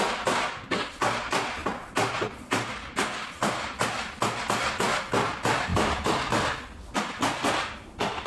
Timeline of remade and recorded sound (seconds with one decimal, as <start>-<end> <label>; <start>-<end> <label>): 0.0-8.3 recorded